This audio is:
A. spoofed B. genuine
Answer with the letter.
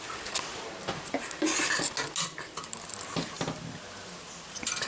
B